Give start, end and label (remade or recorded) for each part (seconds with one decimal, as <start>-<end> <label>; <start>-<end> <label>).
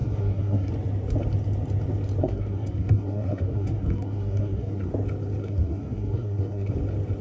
0.0-0.7 remade; 0.7-2.2 recorded; 2.2-4.9 remade; 4.9-5.4 recorded; 5.4-6.7 remade; 6.7-7.2 recorded